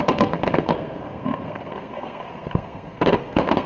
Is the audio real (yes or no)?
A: no